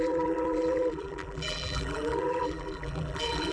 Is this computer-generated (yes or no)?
yes